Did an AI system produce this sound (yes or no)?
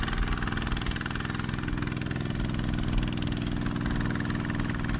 no